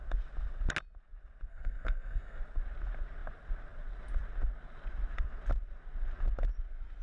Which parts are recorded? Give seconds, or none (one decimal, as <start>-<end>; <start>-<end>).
0.0-1.5; 2.4-7.0